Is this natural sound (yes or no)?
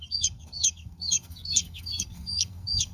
no